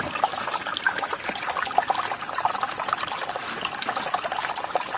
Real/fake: real